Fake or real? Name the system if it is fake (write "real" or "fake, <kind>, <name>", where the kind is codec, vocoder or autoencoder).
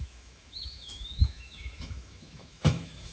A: fake, autoencoder, DAC-VAE